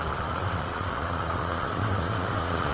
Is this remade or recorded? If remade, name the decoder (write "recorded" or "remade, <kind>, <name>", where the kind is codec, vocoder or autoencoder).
remade, vocoder, Vocos